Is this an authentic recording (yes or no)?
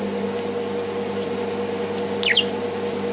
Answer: yes